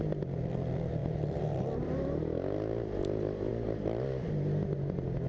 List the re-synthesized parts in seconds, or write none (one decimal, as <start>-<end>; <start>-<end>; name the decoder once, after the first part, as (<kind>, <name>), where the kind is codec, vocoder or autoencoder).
1.0-2.2 (vocoder, BigVGAN v2)